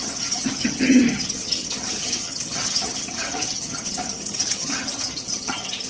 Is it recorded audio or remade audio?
remade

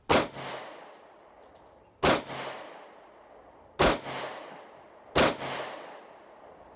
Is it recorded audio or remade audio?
recorded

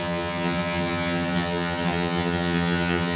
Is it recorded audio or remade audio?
remade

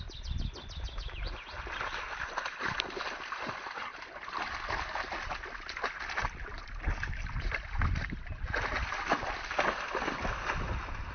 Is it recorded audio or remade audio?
recorded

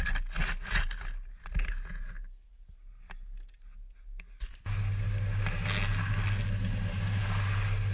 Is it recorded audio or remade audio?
recorded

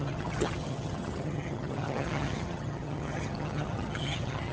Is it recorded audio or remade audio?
remade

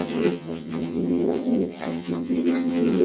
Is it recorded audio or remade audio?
remade